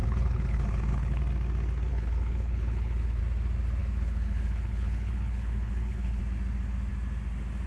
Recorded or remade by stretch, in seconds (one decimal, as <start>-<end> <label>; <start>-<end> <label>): 0.0-1.2 remade; 1.2-1.9 recorded; 1.9-3.2 remade; 3.2-3.8 recorded; 3.8-6.2 remade; 6.2-7.7 recorded